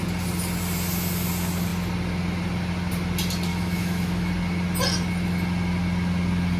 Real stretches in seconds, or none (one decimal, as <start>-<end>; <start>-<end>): 0.0-3.5; 4.3-6.6